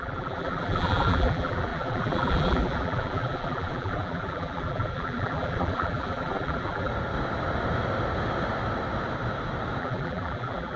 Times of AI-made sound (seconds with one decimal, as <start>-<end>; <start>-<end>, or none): 0.0-6.9; 9.8-10.8